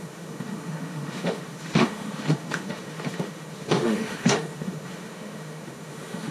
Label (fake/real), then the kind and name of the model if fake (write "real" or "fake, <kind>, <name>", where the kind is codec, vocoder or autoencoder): fake, autoencoder, DAC-VAE